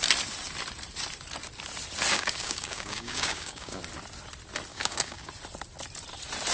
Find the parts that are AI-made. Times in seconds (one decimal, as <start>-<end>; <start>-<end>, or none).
2.1-3.8; 4.7-5.3